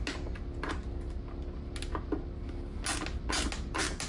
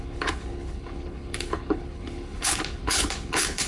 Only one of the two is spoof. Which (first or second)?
second